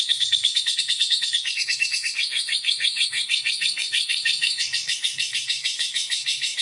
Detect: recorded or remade remade